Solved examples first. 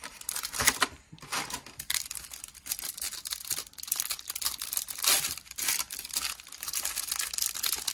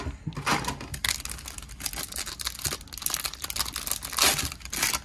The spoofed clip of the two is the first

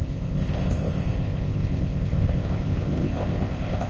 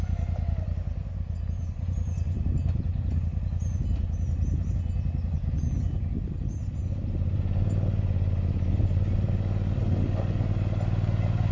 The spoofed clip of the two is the first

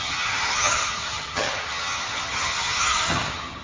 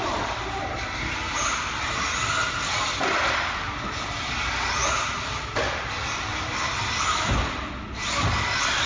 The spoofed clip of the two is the first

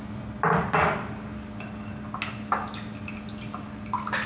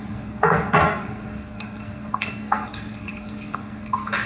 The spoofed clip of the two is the second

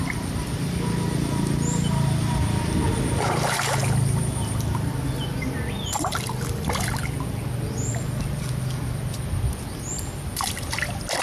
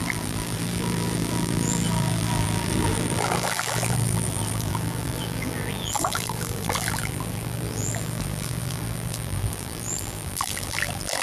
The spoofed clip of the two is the second